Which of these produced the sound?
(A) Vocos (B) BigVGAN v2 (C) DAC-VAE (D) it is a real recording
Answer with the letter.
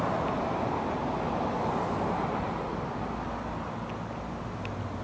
D